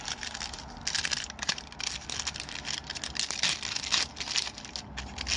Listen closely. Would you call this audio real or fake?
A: real